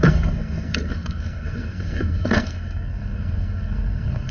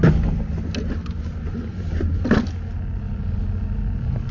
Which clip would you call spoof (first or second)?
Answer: first